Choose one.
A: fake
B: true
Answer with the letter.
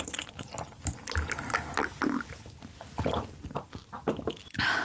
B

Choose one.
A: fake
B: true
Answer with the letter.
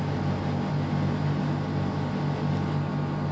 B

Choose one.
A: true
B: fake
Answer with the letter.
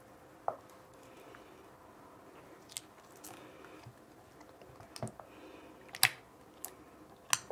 A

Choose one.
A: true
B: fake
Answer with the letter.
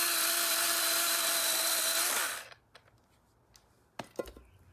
A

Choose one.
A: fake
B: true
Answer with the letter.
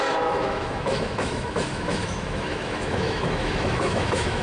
A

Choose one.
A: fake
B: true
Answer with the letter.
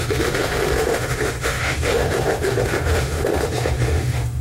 A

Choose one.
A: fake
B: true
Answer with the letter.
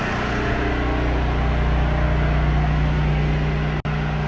B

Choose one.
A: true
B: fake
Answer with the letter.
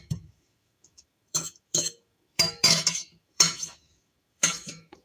B